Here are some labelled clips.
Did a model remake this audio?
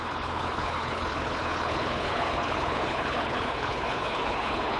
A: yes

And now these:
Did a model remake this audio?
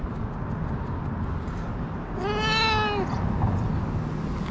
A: no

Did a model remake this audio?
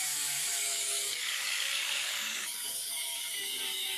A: yes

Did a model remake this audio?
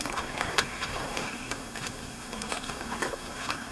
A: yes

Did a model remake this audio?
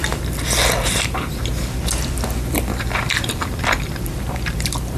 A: yes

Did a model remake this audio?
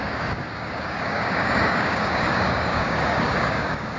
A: yes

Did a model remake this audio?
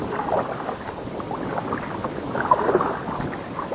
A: no